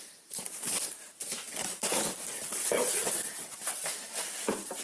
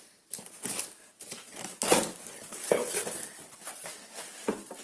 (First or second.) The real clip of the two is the second